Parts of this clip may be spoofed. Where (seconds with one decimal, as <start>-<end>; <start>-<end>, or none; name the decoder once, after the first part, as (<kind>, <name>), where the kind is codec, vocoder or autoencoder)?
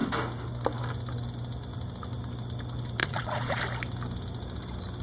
3.0-3.6 (vocoder, Vocos)